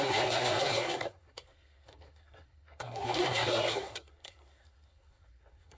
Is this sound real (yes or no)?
no